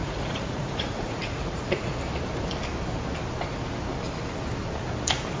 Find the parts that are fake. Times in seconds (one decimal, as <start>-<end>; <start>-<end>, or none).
0.0-2.0